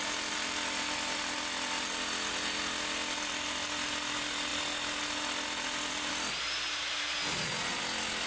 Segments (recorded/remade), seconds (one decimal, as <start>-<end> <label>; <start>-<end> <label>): 0.0-7.3 recorded; 7.3-7.8 remade; 7.8-8.3 recorded